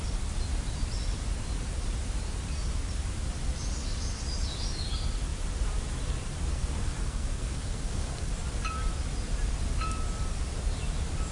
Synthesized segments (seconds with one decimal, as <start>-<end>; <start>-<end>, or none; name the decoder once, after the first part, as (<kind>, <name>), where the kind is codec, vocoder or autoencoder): 6.5-8.3 (codec, SNAC)

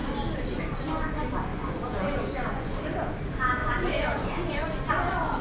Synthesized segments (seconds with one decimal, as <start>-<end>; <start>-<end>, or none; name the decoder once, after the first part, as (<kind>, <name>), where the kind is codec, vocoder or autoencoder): 1.5-2.7 (vocoder, Vocos); 3.6-4.9